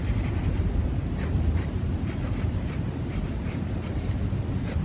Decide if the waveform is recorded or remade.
recorded